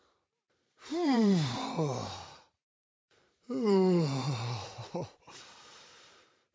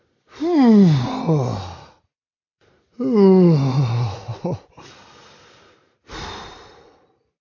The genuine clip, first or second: second